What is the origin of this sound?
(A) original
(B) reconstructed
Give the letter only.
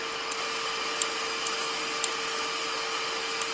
A